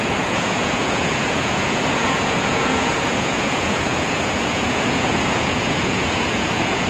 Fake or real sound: fake